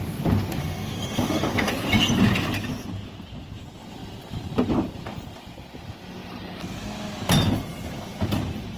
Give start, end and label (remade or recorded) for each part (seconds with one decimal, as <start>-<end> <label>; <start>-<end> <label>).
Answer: 0.0-0.6 recorded; 0.6-1.7 remade; 1.7-8.8 recorded

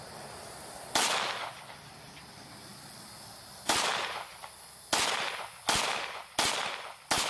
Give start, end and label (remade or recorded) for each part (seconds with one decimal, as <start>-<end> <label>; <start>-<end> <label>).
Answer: 0.0-7.3 recorded

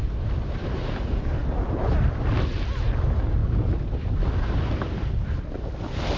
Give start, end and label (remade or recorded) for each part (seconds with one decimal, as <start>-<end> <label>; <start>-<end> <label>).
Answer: 0.0-6.2 recorded

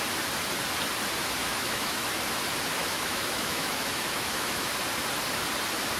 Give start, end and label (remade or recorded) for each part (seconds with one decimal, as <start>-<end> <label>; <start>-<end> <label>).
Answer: 0.0-1.4 recorded; 1.4-2.1 remade; 2.1-2.8 recorded; 2.8-4.7 remade; 4.7-6.0 recorded

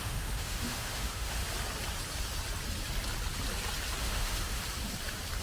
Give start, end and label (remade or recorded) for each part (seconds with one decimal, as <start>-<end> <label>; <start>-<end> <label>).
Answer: 0.0-1.4 remade; 1.4-4.0 recorded; 4.0-4.6 remade; 4.6-5.4 recorded